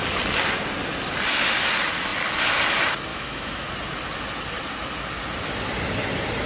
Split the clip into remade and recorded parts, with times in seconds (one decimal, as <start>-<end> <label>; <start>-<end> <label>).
0.0-3.1 recorded; 3.1-3.7 remade; 3.7-6.5 recorded

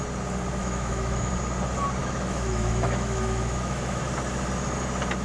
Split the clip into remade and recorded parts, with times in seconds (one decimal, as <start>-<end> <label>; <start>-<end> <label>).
0.0-0.6 recorded; 0.6-1.3 remade; 1.3-2.0 recorded; 2.0-4.0 remade; 4.0-5.2 recorded

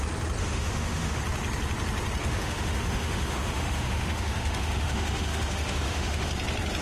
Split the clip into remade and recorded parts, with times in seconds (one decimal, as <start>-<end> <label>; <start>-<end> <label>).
0.0-0.4 recorded; 0.4-1.2 remade; 1.2-2.2 recorded; 2.2-6.3 remade; 6.3-6.8 recorded

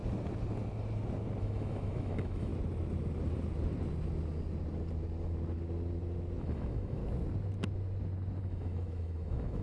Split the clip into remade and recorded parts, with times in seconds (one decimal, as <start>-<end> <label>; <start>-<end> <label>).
0.0-1.4 recorded; 1.4-2.5 remade; 2.5-6.4 recorded; 6.4-7.0 remade; 7.0-8.4 recorded; 8.4-9.6 remade

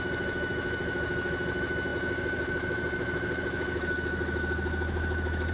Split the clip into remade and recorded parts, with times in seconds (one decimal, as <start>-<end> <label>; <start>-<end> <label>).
0.0-5.5 remade

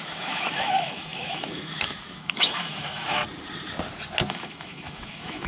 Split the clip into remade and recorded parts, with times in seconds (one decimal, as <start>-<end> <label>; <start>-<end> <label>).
0.0-3.2 remade; 3.2-4.3 recorded; 4.3-5.5 remade

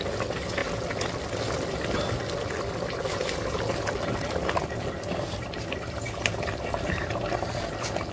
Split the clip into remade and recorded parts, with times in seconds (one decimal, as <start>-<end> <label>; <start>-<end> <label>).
0.0-8.1 recorded

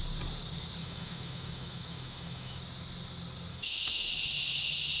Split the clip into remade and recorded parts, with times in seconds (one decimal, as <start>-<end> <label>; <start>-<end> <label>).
0.0-0.8 recorded; 0.8-2.6 remade; 2.6-3.5 recorded; 3.5-4.1 remade; 4.1-5.0 recorded